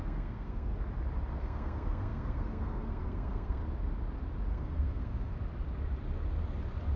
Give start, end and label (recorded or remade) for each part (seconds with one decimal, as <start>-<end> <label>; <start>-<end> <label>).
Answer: 0.0-0.7 remade; 0.7-1.4 recorded; 1.4-3.6 remade; 3.6-4.5 recorded; 4.5-5.3 remade; 5.3-7.0 recorded